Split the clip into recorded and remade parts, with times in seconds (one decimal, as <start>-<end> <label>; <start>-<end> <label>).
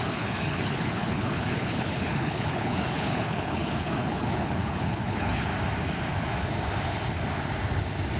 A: 0.0-5.5 remade; 5.5-8.2 recorded